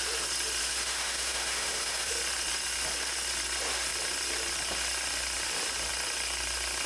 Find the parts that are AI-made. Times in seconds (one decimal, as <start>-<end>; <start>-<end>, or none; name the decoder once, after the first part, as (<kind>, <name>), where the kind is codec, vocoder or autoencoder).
0.6-2.1 (autoencoder, DAC-VAE)